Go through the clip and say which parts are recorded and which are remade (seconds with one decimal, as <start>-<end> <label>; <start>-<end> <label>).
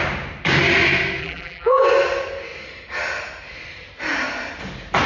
0.0-1.2 recorded; 1.2-1.8 remade; 1.8-5.1 recorded